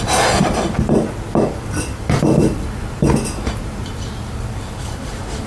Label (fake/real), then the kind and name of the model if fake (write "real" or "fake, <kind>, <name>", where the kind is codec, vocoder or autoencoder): fake, vocoder, BigVGAN v2